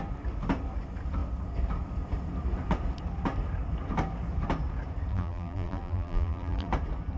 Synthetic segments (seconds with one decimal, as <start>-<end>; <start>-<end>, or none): 5.1-6.7